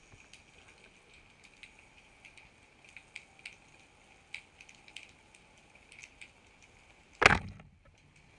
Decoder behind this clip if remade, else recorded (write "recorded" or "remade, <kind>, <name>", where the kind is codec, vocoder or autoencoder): recorded